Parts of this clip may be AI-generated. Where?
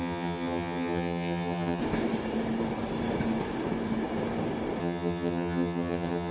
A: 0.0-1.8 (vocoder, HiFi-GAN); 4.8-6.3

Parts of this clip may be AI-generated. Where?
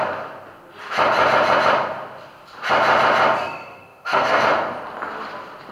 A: 3.4-4.4 (codec, SNAC)